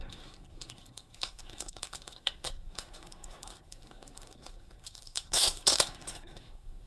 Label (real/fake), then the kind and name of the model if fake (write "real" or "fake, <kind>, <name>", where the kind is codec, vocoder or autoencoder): fake, codec, SNAC